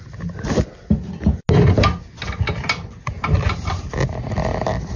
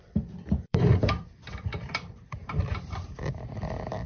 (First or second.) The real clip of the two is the first